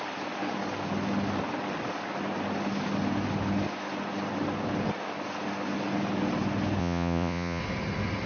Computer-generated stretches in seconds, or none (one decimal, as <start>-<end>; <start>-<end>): 6.8-7.6